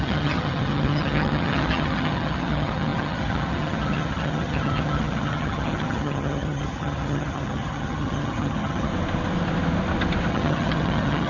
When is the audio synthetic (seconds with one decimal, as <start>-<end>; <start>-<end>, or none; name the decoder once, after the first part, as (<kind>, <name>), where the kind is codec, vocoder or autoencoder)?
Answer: 0.0-8.9 (vocoder, HiFi-GAN); 10.3-11.3